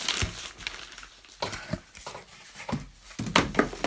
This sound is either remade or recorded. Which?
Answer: recorded